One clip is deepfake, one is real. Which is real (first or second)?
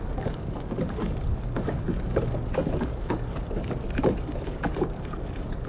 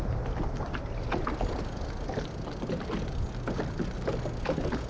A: second